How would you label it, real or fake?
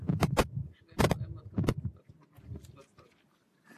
real